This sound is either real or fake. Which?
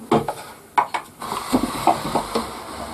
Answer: real